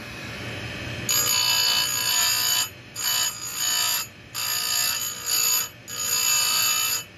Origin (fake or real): real